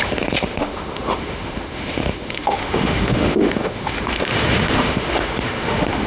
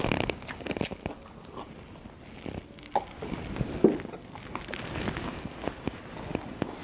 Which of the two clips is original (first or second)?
second